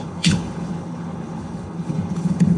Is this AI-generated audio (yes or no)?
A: yes